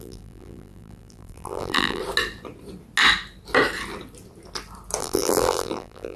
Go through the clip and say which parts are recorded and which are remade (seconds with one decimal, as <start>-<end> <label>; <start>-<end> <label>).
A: 0.0-2.0 remade; 2.0-5.0 recorded; 5.0-6.2 remade